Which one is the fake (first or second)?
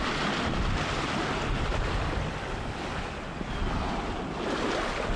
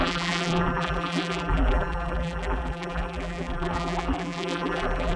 second